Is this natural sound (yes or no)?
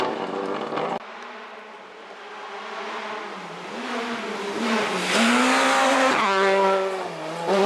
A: yes